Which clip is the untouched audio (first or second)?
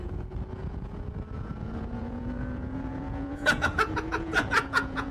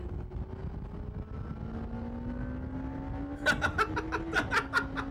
second